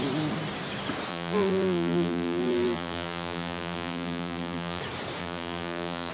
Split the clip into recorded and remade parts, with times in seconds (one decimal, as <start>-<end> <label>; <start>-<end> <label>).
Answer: 0.0-1.1 recorded; 1.1-4.8 remade; 4.8-5.2 recorded; 5.2-6.1 remade